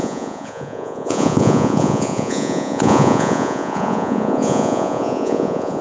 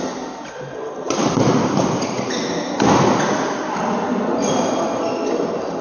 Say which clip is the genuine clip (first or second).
second